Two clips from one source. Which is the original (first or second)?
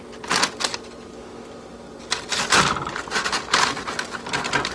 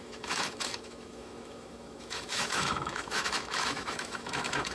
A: first